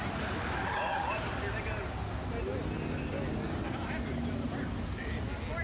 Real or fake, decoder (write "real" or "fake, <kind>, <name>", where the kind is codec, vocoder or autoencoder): real